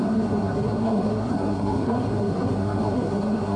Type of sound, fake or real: fake